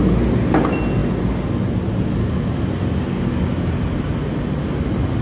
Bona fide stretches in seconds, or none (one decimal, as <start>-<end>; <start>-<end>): 0.0-5.2